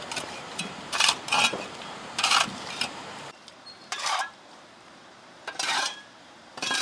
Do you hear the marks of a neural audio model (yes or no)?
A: yes